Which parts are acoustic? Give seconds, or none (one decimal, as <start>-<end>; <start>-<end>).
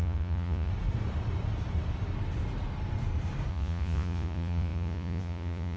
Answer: 0.7-3.5